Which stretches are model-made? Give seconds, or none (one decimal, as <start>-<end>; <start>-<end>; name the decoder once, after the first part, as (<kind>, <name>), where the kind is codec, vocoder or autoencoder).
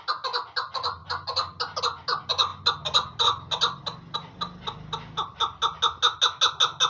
none